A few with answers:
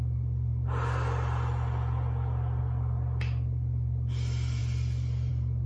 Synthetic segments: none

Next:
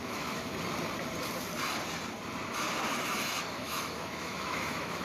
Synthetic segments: 0.0-0.5; 3.5-5.0

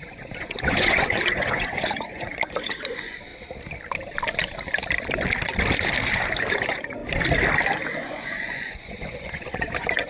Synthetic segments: 0.0-3.3; 6.5-7.0; 8.0-10.1

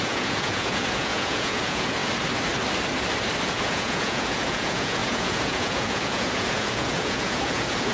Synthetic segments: 0.0-2.0; 3.4-7.9

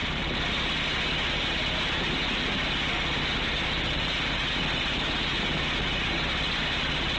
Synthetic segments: none

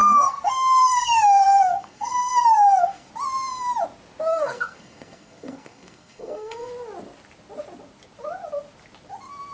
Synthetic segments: 0.0-3.1; 4.3-6.7

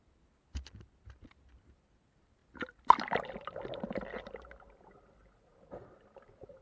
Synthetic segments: none